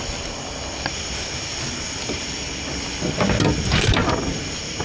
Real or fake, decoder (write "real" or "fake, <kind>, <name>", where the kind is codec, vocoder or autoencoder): real